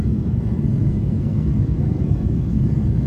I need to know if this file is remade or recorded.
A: remade